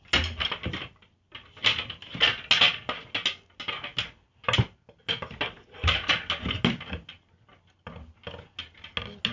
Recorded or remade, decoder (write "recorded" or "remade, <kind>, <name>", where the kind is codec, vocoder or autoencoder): recorded